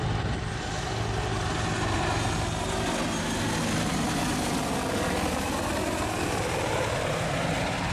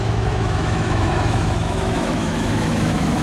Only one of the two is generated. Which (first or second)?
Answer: second